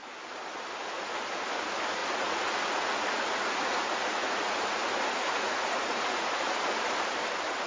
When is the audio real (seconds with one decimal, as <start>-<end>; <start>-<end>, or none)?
0.0-2.0; 6.6-7.7